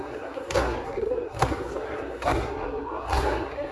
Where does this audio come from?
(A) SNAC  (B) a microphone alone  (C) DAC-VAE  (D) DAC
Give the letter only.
A